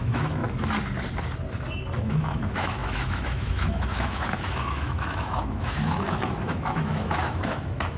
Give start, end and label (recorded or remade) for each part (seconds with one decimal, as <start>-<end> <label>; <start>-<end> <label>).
0.0-0.4 remade; 0.4-2.0 recorded; 2.0-8.0 remade